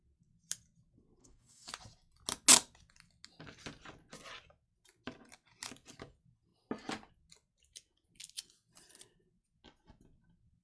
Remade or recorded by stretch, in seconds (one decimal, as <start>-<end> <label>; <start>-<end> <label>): 0.0-1.2 recorded; 1.2-1.7 remade; 1.7-10.6 recorded